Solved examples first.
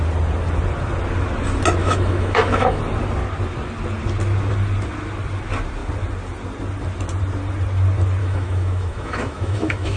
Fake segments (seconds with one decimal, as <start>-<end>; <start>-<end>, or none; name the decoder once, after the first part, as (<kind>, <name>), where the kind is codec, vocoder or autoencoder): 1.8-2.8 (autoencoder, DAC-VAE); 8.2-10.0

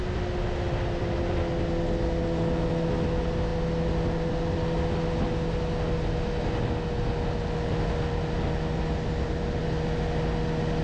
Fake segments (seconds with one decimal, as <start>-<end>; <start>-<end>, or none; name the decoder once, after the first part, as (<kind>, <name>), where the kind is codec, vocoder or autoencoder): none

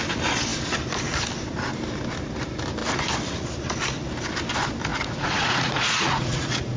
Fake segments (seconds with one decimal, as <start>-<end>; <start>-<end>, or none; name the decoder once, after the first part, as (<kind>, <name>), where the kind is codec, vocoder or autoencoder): 4.9-6.8 (vocoder, Vocos)